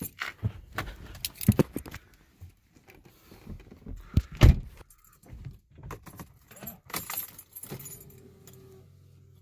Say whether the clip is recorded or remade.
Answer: recorded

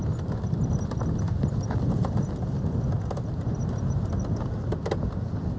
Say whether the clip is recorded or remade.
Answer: recorded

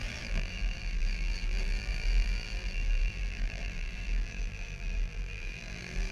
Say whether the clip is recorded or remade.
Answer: remade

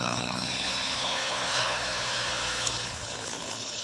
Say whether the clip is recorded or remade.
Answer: remade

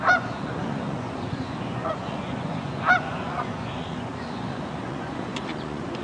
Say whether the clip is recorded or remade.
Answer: remade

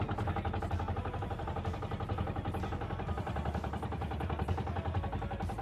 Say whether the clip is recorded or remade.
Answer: recorded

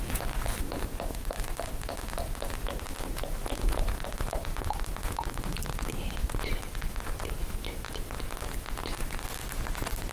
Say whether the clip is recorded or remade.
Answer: recorded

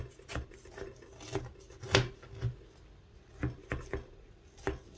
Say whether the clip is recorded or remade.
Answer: recorded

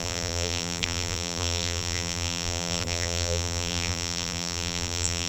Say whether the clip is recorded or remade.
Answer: remade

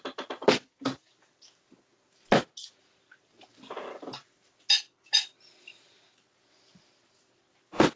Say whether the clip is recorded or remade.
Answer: recorded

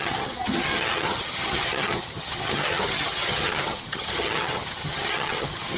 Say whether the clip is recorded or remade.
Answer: remade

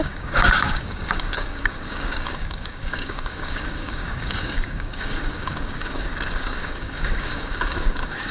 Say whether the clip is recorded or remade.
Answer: remade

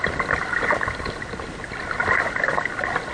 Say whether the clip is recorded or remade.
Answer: recorded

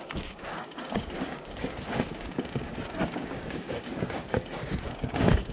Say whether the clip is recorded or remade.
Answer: remade